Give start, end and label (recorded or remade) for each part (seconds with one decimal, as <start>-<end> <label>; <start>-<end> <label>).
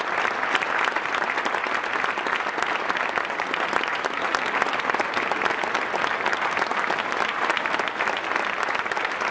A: 0.0-9.3 recorded